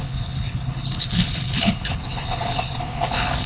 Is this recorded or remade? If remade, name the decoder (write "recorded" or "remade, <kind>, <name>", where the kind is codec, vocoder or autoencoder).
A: remade, codec, HILCodec